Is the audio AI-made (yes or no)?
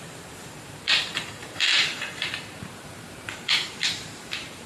yes